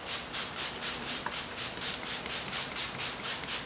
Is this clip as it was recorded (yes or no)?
yes